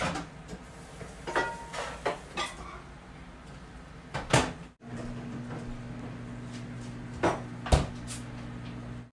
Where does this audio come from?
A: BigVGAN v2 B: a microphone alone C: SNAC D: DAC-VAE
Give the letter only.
B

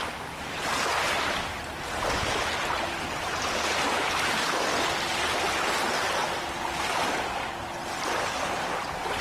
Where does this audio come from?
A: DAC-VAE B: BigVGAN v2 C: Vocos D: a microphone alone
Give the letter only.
D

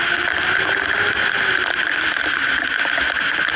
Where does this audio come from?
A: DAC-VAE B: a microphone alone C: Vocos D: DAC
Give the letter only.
B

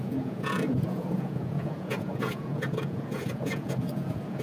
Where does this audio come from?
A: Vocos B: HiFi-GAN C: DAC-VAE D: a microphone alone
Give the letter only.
A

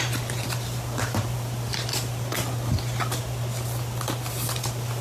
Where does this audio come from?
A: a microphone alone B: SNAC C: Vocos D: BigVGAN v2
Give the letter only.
A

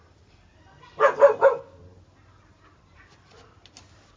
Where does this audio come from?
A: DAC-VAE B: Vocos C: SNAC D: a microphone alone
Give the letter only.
D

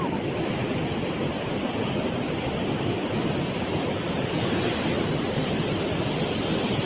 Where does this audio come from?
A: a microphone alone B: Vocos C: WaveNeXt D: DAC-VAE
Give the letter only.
A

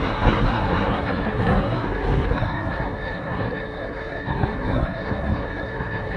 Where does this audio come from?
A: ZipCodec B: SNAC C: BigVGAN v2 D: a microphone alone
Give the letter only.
B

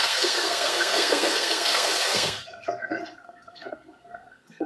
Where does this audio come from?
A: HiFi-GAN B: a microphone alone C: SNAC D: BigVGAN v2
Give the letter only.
C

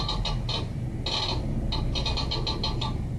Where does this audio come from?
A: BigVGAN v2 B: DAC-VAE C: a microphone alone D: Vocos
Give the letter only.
C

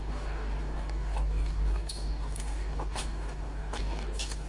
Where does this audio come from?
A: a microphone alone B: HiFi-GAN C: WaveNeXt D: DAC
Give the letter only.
D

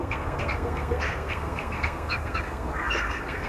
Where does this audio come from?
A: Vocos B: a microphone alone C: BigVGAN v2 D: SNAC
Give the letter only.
D